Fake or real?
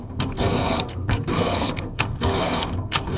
fake